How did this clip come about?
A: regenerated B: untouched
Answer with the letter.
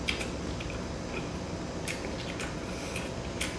B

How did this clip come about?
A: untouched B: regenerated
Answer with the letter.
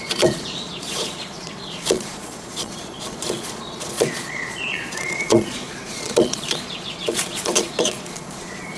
B